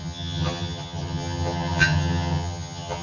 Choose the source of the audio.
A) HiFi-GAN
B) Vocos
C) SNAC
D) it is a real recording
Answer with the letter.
A